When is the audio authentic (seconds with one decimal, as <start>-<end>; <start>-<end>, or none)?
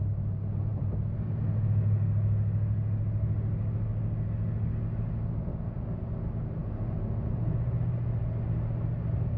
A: 0.0-5.5; 6.1-6.6; 7.6-9.4